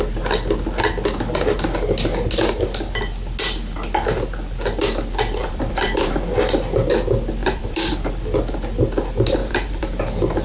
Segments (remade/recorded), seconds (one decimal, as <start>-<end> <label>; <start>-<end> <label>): 0.0-5.4 recorded; 5.4-6.3 remade; 6.3-7.4 recorded; 7.4-8.1 remade; 8.1-9.4 recorded; 9.4-10.0 remade; 10.0-10.4 recorded